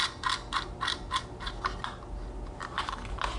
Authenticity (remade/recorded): recorded